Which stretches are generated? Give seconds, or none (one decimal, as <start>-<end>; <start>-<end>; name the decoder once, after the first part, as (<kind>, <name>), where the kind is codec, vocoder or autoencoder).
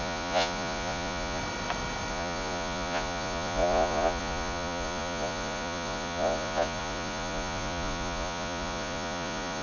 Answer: 0.0-1.4 (vocoder, Vocos); 2.1-9.6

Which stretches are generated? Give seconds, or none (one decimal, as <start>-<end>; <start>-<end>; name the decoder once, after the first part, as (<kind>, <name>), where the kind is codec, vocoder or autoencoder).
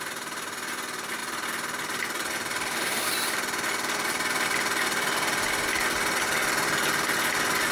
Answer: none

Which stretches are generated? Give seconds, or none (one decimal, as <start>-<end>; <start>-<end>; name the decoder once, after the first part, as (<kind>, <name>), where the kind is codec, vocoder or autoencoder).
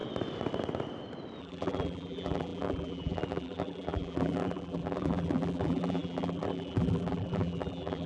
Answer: 1.4-8.1 (vocoder, BigVGAN v2)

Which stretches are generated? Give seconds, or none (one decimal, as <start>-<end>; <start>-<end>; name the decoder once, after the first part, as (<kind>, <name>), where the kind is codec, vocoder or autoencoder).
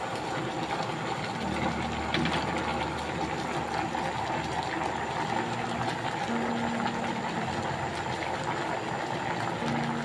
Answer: none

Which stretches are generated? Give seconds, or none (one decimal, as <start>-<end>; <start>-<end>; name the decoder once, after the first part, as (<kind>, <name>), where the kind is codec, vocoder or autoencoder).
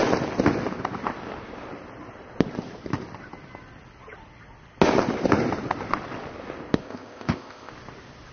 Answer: 6.8-7.7 (codec, ZipCodec)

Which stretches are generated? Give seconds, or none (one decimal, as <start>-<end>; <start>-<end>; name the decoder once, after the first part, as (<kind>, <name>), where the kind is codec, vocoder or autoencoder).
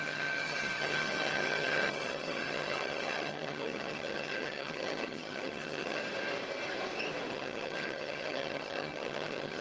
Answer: 0.0-6.0 (vocoder, HiFi-GAN); 7.3-9.6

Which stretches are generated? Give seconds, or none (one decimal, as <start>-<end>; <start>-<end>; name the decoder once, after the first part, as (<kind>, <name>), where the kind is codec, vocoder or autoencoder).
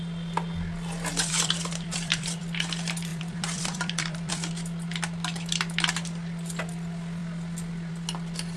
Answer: 1.1-2.4 (vocoder, BigVGAN v2); 3.1-4.5